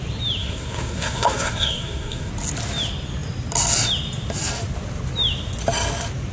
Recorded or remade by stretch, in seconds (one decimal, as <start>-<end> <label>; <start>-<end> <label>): 0.0-0.4 recorded; 0.4-2.3 remade; 2.3-6.3 recorded